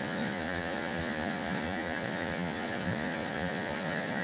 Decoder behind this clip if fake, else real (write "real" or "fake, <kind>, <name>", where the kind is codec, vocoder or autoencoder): fake, vocoder, Vocos